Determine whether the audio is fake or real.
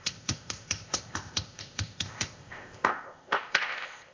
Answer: fake